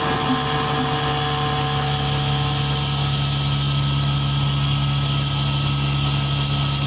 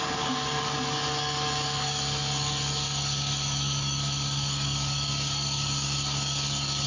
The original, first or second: first